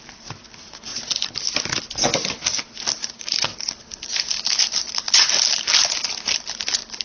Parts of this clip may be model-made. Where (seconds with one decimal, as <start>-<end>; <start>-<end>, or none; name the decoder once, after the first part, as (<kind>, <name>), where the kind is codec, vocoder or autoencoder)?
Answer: 3.0-3.6 (codec, DAC)